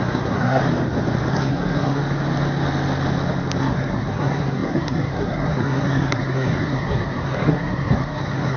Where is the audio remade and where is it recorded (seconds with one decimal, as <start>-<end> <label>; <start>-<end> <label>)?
0.0-0.6 remade; 0.6-1.3 recorded; 1.3-2.0 remade; 2.0-3.6 recorded; 3.6-8.6 remade